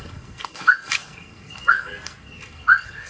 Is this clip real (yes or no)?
no